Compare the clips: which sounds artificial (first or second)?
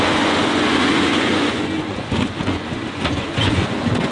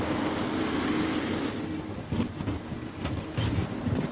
first